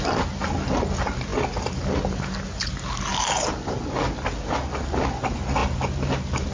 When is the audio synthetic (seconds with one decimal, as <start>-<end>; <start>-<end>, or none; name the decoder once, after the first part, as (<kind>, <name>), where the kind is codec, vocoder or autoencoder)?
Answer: none